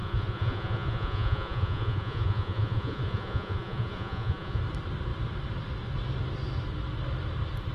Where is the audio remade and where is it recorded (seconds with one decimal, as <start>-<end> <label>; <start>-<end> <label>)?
0.0-4.6 remade; 4.6-7.7 recorded